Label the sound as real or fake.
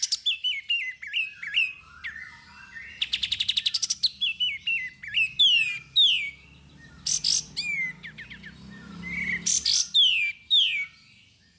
real